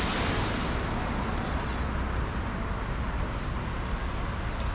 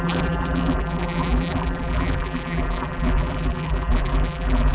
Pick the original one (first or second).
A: first